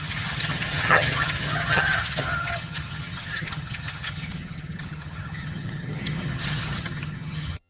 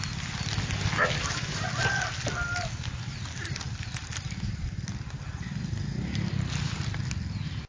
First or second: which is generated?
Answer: first